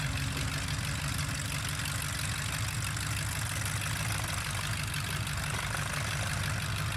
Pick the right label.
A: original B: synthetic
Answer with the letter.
A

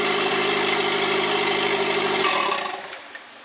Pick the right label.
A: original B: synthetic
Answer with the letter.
A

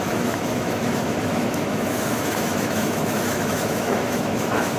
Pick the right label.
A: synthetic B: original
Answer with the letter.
A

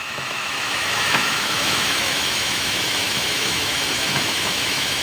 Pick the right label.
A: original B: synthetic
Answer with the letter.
B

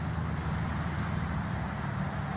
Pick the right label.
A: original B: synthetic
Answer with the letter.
A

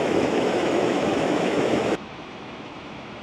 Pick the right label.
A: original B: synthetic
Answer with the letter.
B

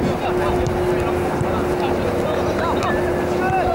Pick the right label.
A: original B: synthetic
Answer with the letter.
A